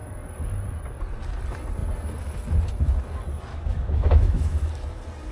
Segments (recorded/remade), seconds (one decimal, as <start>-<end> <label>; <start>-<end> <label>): 0.0-3.5 recorded; 3.5-4.7 remade; 4.7-5.3 recorded